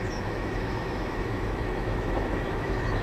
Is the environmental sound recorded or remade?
remade